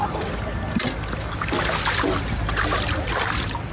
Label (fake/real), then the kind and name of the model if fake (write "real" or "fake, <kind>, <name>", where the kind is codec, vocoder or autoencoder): real